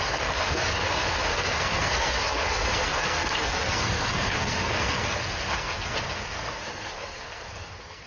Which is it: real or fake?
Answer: fake